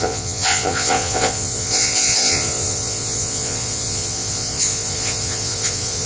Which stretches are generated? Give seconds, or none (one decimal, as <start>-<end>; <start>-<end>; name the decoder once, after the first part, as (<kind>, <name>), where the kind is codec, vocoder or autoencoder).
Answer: 0.0-6.1 (vocoder, Vocos)